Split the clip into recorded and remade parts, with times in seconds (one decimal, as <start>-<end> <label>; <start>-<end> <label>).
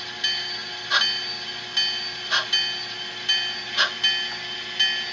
0.0-5.1 recorded